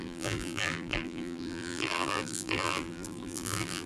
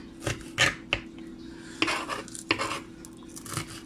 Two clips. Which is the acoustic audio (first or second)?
second